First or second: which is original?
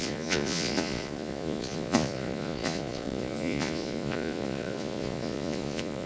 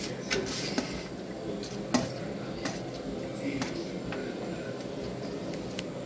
second